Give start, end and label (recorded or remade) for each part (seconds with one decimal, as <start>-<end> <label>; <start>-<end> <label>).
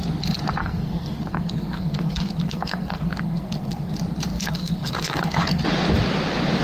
0.0-0.6 recorded; 0.6-3.9 remade; 3.9-4.3 recorded; 4.3-5.6 remade; 5.6-6.6 recorded